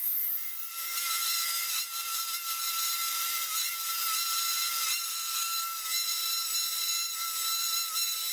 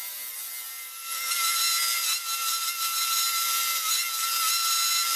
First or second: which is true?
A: second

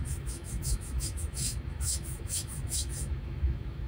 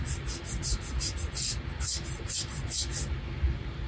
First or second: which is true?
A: second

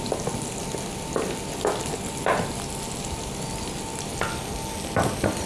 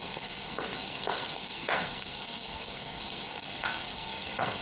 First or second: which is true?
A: first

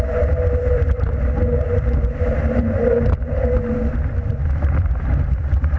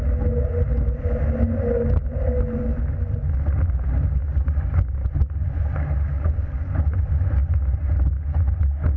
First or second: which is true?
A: second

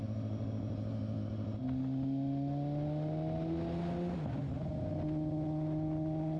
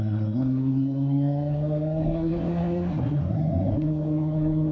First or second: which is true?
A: first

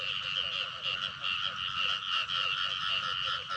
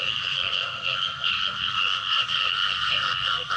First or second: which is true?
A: first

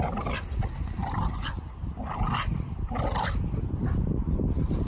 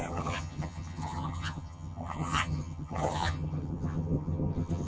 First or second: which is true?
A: first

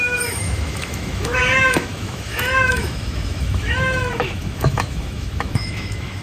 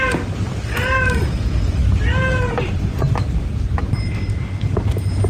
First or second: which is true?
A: second